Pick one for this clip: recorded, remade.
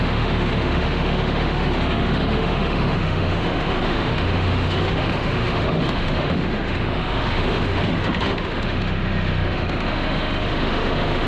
remade